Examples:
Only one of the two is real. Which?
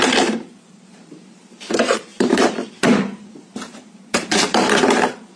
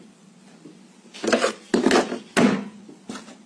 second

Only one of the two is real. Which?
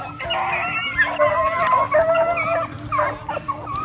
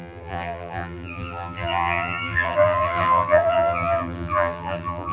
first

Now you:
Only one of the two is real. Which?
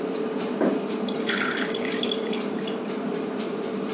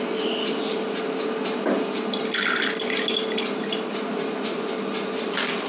second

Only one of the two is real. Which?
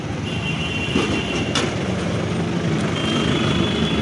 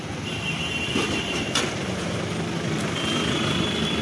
first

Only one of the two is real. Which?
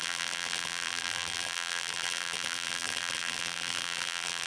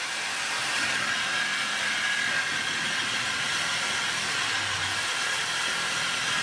second